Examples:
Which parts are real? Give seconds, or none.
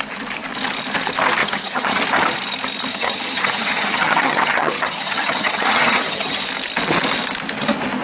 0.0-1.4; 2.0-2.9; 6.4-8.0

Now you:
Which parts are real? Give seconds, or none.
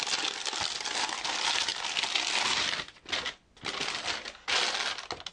0.0-5.3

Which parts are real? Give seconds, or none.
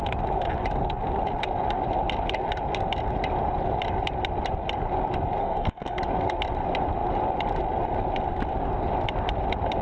0.0-5.4; 6.0-9.8